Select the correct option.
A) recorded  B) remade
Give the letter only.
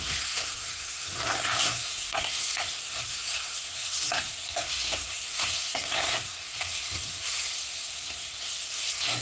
B